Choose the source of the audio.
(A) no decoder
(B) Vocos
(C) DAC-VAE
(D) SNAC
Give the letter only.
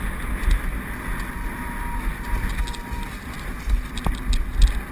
A